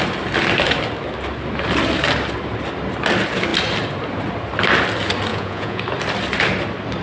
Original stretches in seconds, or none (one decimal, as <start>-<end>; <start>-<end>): 0.0-5.3; 5.8-7.0